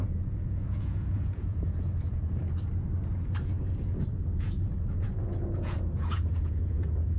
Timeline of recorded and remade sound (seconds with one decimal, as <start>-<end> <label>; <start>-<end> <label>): 0.0-2.4 remade; 2.4-4.1 recorded; 4.1-7.2 remade